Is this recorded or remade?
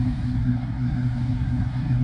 remade